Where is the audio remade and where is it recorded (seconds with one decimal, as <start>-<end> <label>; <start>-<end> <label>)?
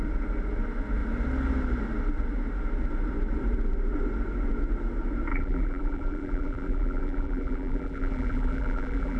0.0-5.3 recorded; 5.3-9.2 remade